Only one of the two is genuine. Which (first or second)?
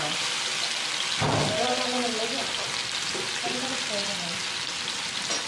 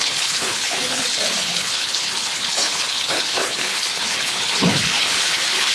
first